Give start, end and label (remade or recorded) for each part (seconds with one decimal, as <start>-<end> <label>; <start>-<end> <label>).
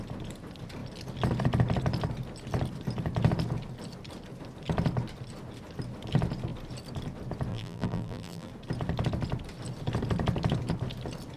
0.0-7.5 recorded; 7.5-8.5 remade; 8.5-11.4 recorded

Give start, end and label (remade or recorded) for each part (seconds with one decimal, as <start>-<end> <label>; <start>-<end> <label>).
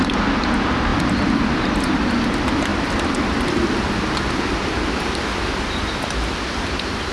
0.0-0.9 recorded; 0.9-1.7 remade; 1.7-2.7 recorded; 2.7-7.1 remade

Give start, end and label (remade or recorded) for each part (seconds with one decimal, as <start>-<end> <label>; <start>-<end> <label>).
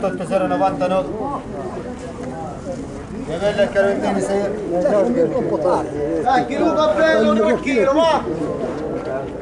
0.0-9.4 recorded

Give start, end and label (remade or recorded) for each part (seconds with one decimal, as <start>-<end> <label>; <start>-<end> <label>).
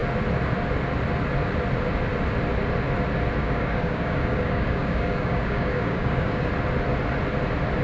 0.0-3.4 recorded; 3.4-6.5 remade; 6.5-7.8 recorded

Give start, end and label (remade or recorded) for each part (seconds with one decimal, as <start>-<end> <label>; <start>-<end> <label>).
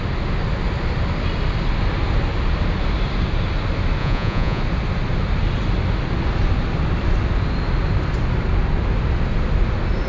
0.0-4.0 recorded; 4.0-4.6 remade; 4.6-10.1 recorded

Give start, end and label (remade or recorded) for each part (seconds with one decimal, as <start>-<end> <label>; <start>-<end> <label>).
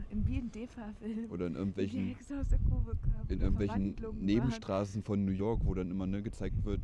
0.0-2.8 recorded; 2.8-4.0 remade; 4.0-6.8 recorded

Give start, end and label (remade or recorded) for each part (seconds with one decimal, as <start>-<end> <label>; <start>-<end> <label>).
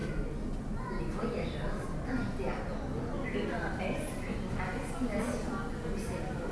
0.0-6.5 recorded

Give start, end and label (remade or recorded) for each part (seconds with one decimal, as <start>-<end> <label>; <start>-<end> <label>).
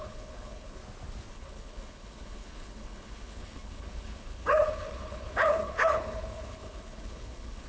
0.0-0.8 remade; 0.8-1.3 recorded; 1.3-7.7 remade